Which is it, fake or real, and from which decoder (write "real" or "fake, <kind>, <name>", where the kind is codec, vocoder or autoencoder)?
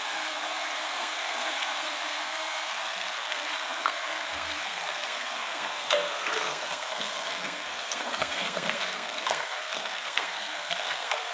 fake, codec, SNAC